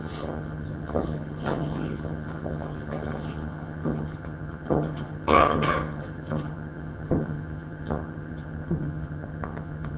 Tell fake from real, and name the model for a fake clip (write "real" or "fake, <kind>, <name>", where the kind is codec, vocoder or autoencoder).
fake, vocoder, HiFi-GAN